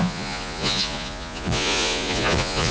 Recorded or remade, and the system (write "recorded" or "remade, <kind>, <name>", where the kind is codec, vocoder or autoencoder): remade, vocoder, Vocos